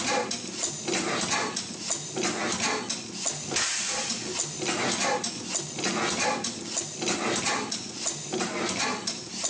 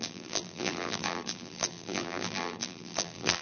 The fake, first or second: second